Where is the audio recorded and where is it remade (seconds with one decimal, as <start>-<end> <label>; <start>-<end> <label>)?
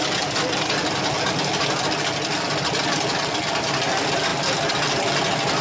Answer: 0.0-5.6 recorded